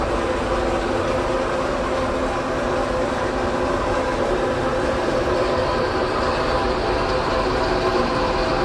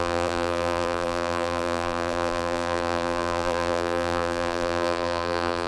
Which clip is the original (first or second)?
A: first